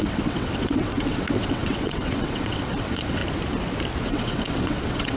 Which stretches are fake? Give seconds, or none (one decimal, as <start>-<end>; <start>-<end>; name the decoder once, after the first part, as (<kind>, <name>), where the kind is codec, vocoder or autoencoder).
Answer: 0.0-3.2 (vocoder, WaveNeXt); 4.0-5.2